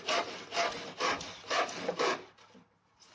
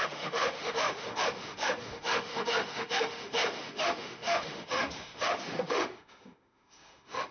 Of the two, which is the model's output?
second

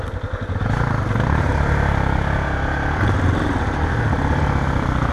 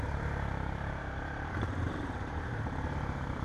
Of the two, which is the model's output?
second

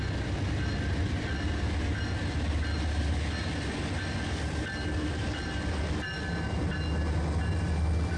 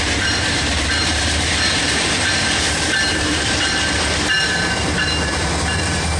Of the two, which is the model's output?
second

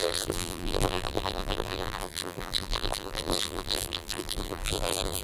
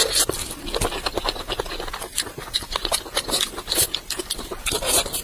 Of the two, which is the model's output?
first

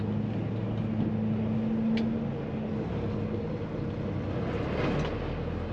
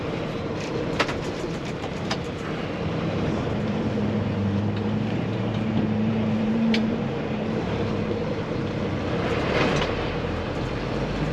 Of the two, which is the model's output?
second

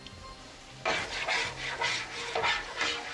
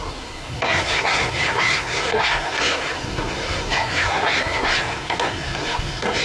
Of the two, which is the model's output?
second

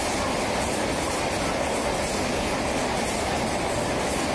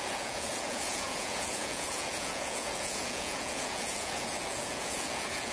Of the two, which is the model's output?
second